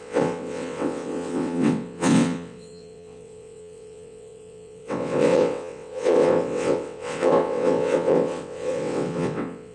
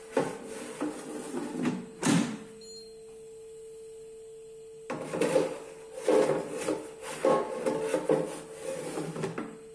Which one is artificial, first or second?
first